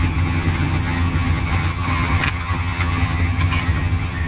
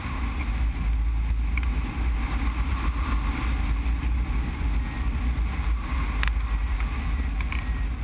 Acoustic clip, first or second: second